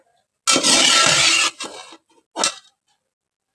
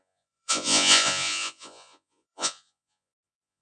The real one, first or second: first